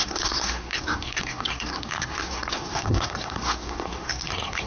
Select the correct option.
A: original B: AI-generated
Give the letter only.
B